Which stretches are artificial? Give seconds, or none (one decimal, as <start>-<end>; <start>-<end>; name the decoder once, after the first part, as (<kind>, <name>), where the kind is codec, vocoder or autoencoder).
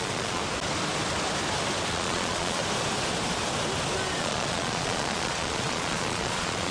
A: 0.0-0.4 (vocoder, Vocos); 1.9-2.6; 4.2-6.7